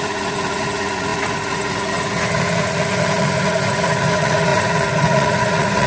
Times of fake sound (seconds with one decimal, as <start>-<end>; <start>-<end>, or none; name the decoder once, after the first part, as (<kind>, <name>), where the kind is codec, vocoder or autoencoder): 0.0-5.9 (vocoder, Vocos)